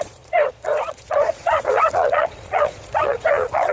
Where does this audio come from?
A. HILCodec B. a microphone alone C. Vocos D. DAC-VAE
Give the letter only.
C